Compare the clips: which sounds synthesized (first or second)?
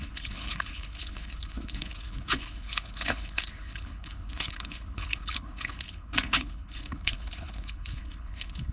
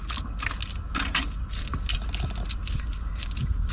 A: first